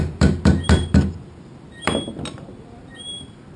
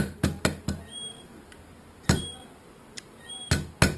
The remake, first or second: first